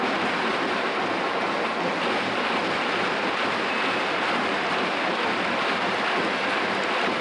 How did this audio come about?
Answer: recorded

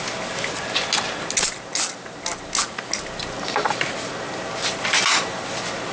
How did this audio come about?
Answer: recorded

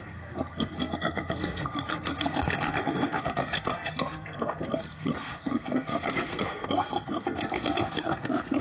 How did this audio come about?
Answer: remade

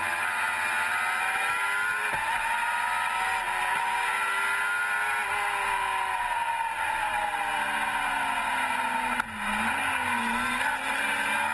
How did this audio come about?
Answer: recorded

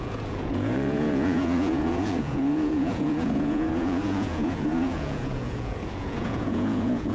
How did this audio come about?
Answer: remade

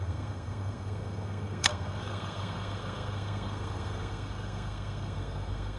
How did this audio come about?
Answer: remade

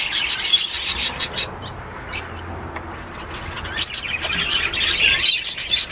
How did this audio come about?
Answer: recorded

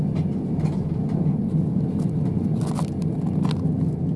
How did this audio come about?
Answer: recorded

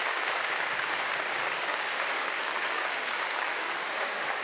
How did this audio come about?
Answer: remade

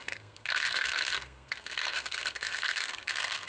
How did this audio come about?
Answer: remade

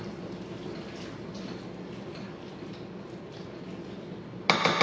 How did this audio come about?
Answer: recorded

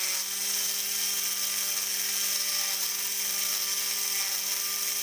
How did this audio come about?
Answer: recorded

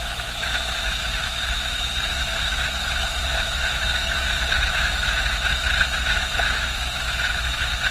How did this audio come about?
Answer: remade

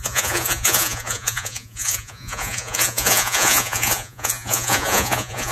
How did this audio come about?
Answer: remade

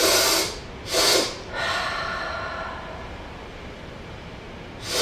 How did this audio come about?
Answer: recorded